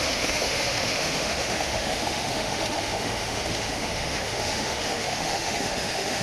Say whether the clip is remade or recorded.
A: remade